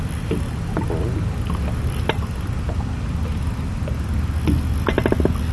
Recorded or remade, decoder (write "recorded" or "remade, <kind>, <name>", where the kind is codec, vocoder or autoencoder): recorded